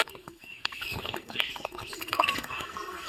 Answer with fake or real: fake